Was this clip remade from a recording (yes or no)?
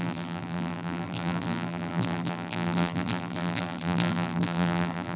yes